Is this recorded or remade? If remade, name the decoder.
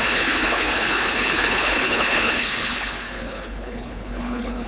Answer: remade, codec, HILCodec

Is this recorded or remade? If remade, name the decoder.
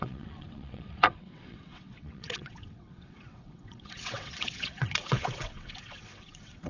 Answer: remade, vocoder, WaveNeXt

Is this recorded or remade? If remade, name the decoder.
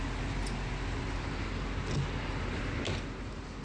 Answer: recorded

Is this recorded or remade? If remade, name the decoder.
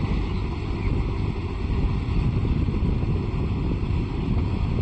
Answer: recorded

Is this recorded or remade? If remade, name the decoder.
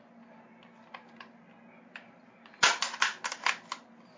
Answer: recorded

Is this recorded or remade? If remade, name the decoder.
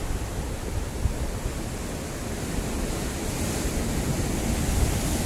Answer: recorded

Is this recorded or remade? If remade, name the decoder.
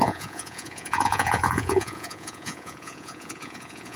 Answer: remade, vocoder, Vocos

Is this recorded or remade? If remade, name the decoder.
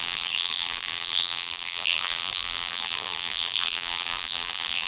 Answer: remade, vocoder, BigVGAN v2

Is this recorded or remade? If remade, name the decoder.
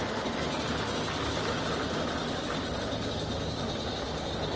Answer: recorded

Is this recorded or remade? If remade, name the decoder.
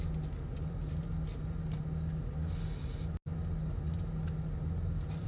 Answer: recorded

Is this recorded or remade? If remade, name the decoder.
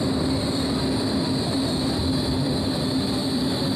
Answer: remade, vocoder, BigVGAN v2